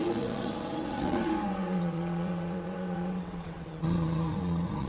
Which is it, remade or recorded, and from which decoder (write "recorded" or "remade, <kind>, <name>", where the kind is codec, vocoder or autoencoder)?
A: remade, vocoder, WaveNeXt